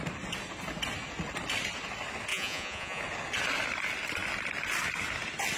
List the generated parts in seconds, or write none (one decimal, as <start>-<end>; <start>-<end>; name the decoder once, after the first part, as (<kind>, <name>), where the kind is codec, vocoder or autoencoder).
2.3-3.0 (vocoder, Vocos)